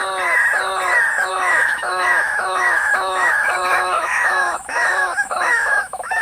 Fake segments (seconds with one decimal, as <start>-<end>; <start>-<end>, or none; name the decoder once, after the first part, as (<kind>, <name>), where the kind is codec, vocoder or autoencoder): 1.3-6.2 (autoencoder, DAC-VAE)